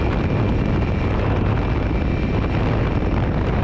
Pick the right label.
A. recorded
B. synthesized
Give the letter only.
A